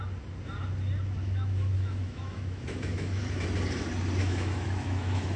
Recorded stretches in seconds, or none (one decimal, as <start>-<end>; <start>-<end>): 0.0-1.2; 3.2-4.2